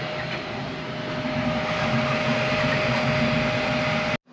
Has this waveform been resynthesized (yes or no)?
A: no